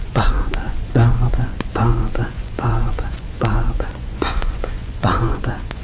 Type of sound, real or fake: fake